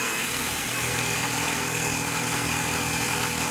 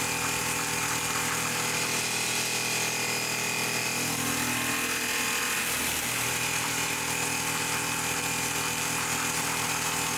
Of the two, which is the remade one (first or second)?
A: first